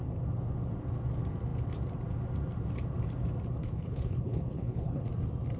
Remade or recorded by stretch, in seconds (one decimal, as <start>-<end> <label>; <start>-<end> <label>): 0.0-3.6 recorded; 3.6-5.1 remade; 5.1-5.6 recorded